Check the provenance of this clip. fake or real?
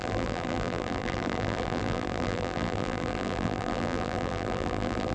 fake